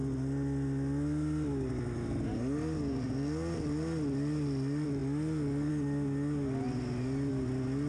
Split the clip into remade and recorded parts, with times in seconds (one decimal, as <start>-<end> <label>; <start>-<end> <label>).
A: 0.0-7.9 recorded